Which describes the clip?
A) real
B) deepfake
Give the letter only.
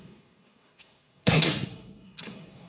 B